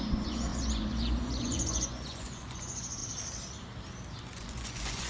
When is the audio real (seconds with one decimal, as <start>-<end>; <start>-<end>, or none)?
3.0-4.2